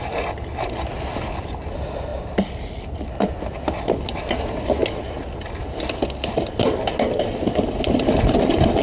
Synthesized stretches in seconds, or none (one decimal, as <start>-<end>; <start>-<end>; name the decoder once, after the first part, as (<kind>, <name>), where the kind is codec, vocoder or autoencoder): none